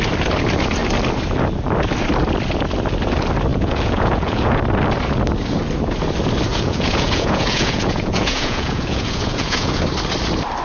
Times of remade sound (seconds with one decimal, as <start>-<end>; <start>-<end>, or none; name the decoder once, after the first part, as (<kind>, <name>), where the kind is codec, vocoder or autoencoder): 3.5-4.6 (vocoder, Vocos); 6.5-9.8